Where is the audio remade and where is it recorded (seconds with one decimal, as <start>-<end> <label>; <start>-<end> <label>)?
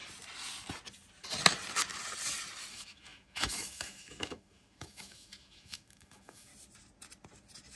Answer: 0.0-2.7 recorded; 2.7-6.5 remade; 6.5-7.8 recorded